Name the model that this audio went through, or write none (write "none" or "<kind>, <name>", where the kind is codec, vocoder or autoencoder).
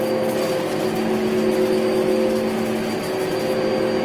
none